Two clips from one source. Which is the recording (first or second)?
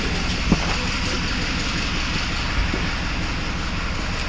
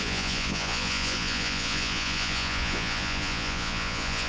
first